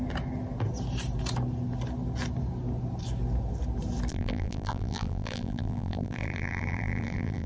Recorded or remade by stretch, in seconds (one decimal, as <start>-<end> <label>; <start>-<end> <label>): 0.0-4.1 recorded; 4.1-7.5 remade